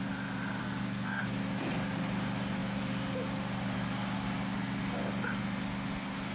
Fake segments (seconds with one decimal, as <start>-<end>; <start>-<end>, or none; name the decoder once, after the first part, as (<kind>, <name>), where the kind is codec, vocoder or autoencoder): 0.6-1.2 (codec, SNAC)